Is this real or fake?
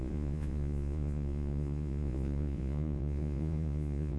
fake